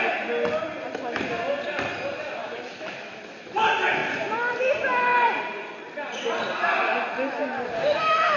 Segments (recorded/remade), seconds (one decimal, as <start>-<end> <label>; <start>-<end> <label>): 0.0-2.4 recorded; 2.4-3.6 remade; 3.6-8.4 recorded